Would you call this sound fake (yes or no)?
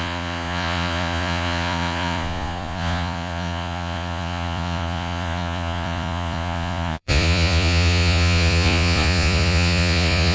yes